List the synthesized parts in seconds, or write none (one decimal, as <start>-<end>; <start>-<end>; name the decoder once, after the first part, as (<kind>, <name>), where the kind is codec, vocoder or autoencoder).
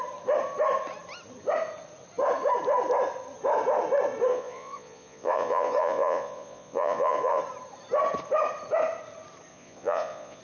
4.3-7.4 (vocoder, Vocos); 9.5-10.4